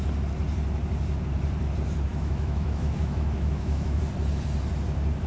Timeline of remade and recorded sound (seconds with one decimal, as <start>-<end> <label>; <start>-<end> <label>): 0.0-2.1 recorded; 2.1-4.0 remade; 4.0-5.3 recorded